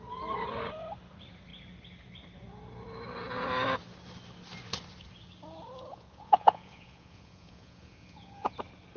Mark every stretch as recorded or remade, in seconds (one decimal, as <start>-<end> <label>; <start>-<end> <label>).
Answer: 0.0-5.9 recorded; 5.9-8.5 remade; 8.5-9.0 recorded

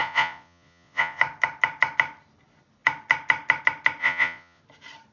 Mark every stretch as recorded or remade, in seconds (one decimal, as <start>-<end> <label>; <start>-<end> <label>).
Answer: 0.0-1.2 remade; 1.2-4.0 recorded; 4.0-4.6 remade; 4.6-5.1 recorded

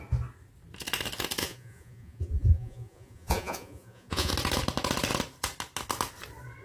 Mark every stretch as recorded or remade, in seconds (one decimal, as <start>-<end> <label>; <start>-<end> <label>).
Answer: 0.0-1.4 recorded; 1.4-4.3 remade; 4.3-6.6 recorded

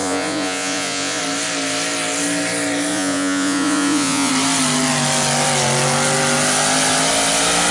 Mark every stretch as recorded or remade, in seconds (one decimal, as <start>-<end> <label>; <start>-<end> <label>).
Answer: 0.0-1.2 remade; 1.2-2.9 recorded; 2.9-4.3 remade; 4.3-7.7 recorded

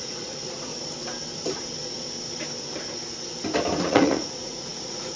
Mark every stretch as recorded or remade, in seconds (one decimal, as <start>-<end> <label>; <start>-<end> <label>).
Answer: 0.0-0.7 remade; 0.7-3.8 recorded; 3.8-5.2 remade

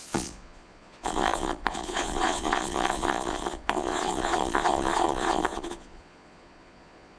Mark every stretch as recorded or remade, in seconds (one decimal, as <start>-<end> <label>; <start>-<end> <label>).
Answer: 0.0-7.2 remade